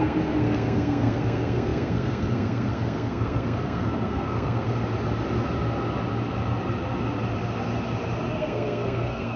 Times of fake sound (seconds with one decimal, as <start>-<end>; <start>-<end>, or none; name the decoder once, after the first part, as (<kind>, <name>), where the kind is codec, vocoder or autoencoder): 0.0-4.8 (codec, SNAC); 8.3-9.4